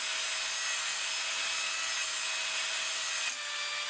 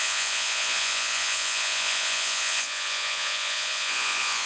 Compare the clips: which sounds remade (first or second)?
second